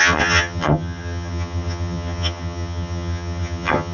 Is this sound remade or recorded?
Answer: remade